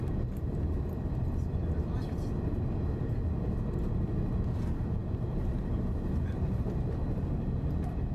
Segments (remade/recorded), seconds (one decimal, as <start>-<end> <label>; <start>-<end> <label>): 0.0-8.1 recorded